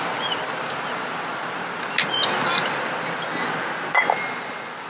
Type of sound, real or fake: real